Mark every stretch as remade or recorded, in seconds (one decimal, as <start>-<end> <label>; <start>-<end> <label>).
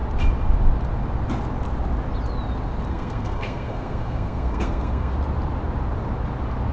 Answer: 0.0-2.9 recorded; 2.9-5.1 remade; 5.1-6.7 recorded